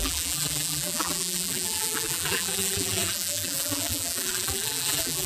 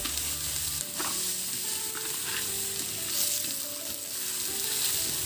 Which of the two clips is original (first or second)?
second